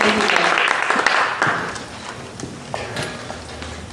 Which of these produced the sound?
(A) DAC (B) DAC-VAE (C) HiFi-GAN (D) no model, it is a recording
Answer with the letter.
D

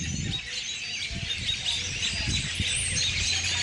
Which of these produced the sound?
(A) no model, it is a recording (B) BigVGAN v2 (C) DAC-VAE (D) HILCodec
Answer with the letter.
A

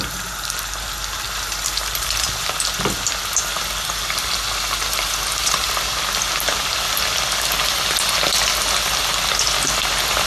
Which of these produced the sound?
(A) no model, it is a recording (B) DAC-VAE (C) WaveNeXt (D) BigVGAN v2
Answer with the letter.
A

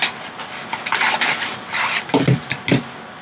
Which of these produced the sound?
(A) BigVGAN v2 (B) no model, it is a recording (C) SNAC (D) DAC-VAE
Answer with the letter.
B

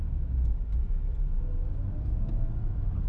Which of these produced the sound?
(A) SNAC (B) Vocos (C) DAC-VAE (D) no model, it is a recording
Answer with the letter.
D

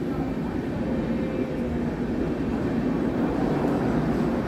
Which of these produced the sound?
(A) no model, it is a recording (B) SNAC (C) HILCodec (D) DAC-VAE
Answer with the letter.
A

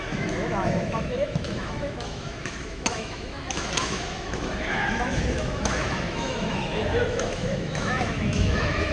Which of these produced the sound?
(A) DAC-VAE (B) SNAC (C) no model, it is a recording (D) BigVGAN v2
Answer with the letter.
A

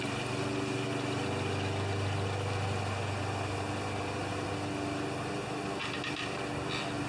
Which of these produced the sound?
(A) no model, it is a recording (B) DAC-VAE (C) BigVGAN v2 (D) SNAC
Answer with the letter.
A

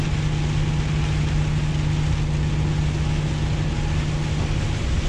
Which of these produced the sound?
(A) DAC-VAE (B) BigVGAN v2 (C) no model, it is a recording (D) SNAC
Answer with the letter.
C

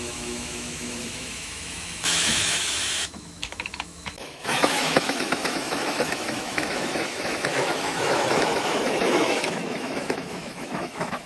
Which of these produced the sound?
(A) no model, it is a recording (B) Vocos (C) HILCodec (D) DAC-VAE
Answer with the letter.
D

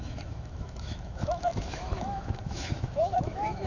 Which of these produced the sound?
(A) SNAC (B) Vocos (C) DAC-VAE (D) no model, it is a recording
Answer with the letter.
C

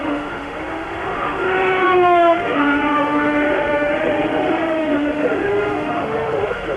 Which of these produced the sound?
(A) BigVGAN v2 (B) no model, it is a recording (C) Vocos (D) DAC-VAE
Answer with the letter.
D